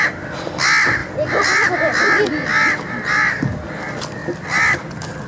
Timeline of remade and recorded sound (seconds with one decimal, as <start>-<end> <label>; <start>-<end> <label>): 0.0-5.3 recorded

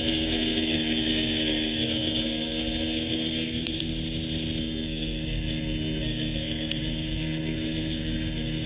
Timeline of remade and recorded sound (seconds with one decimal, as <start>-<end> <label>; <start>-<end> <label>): 0.0-3.9 remade; 3.9-4.6 recorded; 4.6-8.7 remade

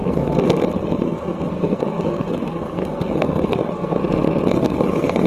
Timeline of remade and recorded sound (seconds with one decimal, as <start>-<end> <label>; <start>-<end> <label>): 0.0-4.0 remade; 4.0-4.5 recorded; 4.5-5.3 remade

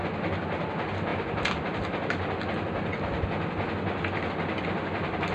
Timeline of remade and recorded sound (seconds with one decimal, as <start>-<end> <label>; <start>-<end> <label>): 0.0-5.3 recorded

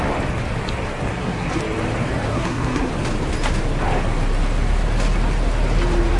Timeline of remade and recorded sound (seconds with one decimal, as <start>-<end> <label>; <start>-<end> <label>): 0.0-1.1 recorded; 1.1-1.6 remade; 1.6-2.3 recorded; 2.3-2.9 remade; 2.9-6.2 recorded

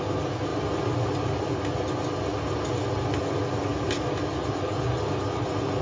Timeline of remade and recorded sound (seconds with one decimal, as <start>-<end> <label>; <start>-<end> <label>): 0.0-5.8 recorded